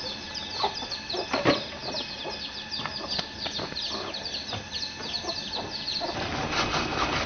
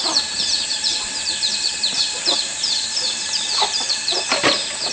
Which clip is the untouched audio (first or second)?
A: first